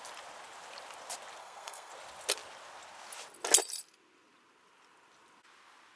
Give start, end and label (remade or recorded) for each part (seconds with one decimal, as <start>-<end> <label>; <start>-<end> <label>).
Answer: 0.0-1.4 recorded; 1.4-1.9 remade; 1.9-6.0 recorded